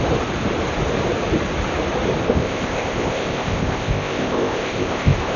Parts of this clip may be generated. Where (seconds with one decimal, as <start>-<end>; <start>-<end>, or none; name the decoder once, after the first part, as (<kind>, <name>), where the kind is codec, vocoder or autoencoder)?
2.2-5.4 (codec, ZipCodec)